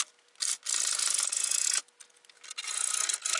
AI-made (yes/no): no